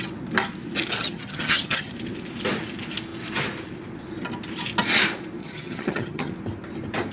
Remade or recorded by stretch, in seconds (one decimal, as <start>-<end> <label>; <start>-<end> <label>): 0.0-1.0 recorded; 1.0-1.9 remade; 1.9-5.4 recorded; 5.4-6.3 remade; 6.3-7.1 recorded